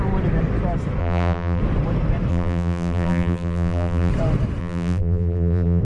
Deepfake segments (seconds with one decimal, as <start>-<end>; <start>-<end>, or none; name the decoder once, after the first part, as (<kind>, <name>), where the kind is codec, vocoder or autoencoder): 1.0-1.6 (vocoder, BigVGAN v2); 2.3-4.1; 4.6-5.8